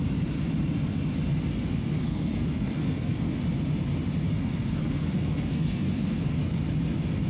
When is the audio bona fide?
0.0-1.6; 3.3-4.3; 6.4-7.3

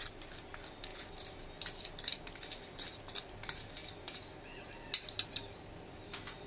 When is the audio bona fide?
0.0-6.5

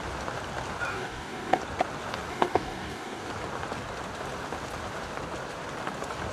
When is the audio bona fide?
0.0-0.9; 1.6-2.3; 3.3-6.3

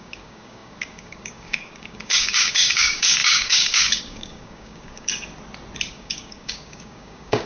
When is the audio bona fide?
5.1-5.9

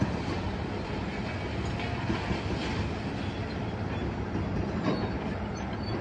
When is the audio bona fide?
0.6-6.0